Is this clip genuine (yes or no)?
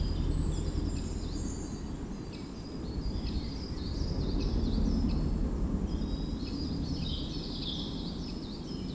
yes